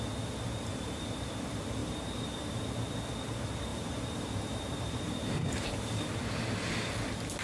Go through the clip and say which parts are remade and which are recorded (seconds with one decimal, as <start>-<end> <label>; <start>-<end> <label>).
0.0-0.7 recorded; 0.7-1.3 remade; 1.3-1.8 recorded; 1.8-2.6 remade; 2.6-3.7 recorded; 3.7-6.2 remade; 6.2-7.4 recorded